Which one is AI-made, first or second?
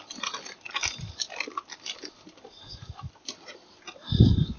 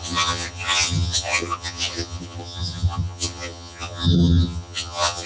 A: second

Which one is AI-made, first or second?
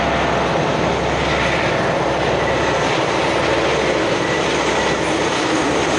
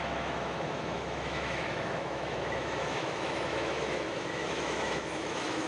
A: second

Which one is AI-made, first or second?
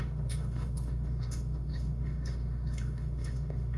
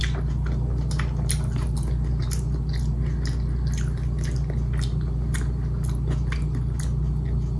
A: first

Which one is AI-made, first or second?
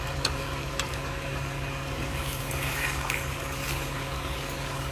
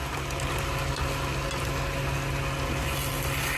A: first